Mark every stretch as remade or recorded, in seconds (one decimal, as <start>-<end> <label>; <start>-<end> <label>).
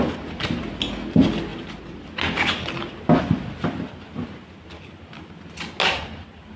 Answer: 0.0-6.6 recorded